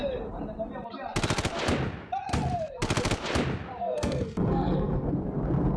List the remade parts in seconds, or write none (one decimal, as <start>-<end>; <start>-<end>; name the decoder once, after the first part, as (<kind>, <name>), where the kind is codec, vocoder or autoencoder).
3.8-5.1 (codec, SNAC)